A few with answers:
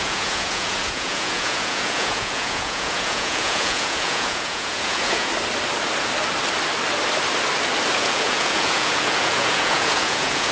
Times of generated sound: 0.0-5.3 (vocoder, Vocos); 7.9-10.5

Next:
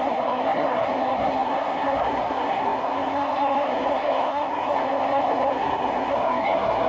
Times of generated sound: 0.0-6.9 (codec, SNAC)

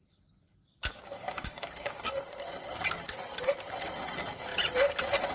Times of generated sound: 0.9-2.2 (codec, DAC)

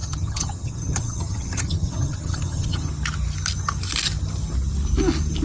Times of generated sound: 0.0-2.9 (vocoder, HiFi-GAN)

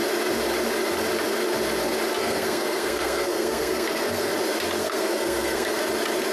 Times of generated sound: 2.2-4.3 (codec, SNAC); 4.8-5.8

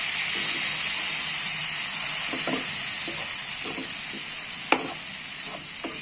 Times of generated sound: none

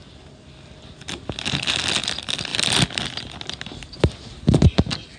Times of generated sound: none